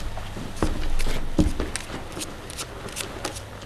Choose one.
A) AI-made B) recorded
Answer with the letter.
B